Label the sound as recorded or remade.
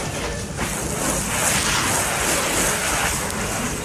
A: recorded